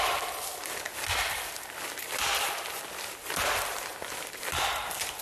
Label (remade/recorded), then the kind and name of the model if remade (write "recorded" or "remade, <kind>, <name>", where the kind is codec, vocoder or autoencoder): recorded